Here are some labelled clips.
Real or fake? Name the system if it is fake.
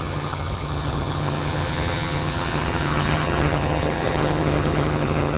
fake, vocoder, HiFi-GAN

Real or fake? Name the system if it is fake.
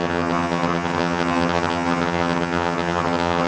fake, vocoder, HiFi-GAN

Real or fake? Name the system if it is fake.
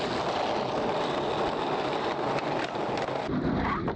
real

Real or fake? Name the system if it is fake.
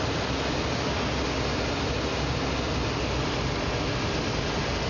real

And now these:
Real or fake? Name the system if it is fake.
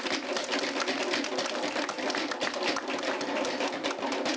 real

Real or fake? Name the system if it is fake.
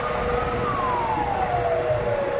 real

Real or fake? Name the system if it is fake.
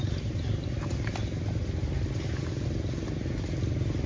real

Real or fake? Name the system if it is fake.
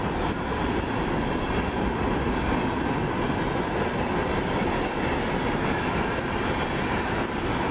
real